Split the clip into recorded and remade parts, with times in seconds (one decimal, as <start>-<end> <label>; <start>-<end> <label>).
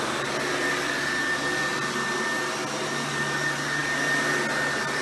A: 0.0-5.0 recorded